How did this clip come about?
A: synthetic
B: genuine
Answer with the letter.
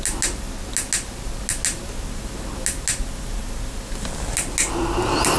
B